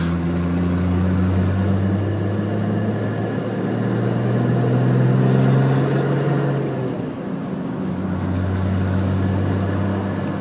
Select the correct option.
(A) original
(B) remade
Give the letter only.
A